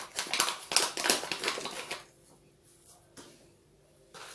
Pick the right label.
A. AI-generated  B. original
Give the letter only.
B